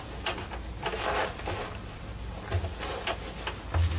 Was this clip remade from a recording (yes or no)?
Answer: no